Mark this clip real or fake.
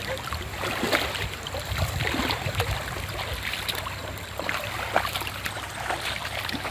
fake